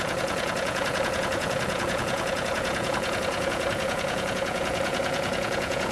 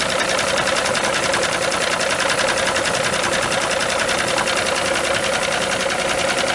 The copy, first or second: first